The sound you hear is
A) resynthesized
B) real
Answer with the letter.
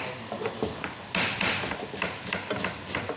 B